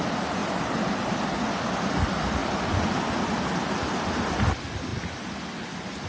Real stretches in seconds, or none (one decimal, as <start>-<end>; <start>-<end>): 0.0-6.1